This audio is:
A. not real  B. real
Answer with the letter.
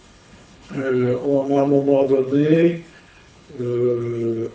A